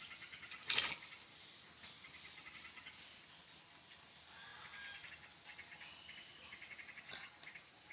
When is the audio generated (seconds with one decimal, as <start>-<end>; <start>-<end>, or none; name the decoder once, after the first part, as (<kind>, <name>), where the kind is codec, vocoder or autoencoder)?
none